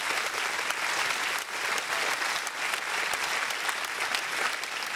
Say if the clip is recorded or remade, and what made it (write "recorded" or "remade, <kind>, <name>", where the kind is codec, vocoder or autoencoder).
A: recorded